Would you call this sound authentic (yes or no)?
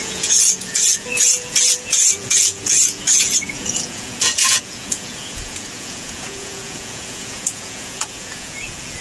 no